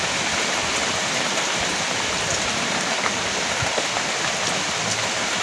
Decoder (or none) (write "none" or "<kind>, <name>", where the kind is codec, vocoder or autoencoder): none